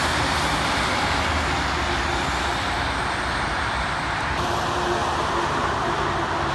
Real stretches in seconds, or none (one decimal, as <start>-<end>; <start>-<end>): 0.0-6.5